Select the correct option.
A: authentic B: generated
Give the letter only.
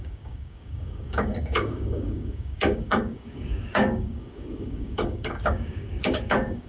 B